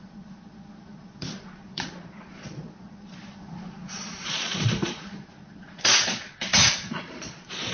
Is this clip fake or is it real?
fake